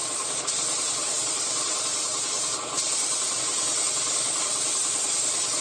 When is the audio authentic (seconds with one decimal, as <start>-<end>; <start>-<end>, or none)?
3.4-5.6